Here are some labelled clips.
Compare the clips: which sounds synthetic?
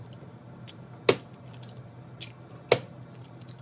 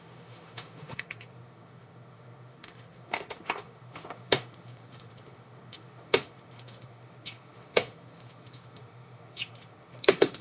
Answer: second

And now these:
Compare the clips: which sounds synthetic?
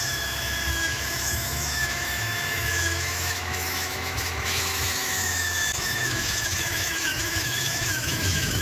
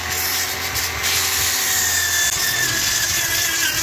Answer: first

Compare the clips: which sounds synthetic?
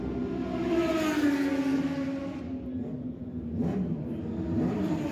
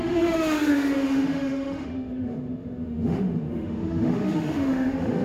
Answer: second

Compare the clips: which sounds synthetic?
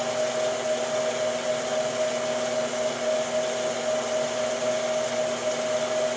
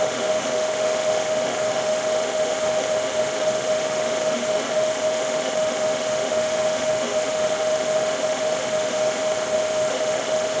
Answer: second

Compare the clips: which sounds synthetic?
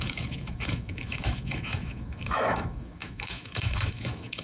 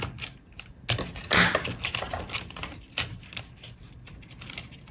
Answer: first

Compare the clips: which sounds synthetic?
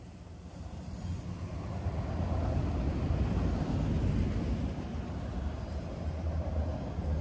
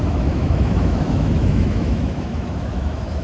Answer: second